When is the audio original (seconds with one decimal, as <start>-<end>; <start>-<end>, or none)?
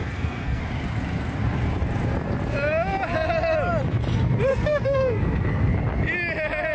0.6-4.5; 5.7-6.7